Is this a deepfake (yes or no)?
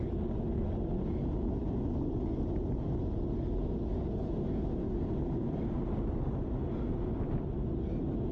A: no